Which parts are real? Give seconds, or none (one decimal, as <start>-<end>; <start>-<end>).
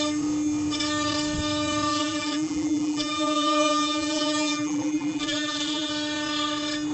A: 0.0-1.9; 5.9-6.9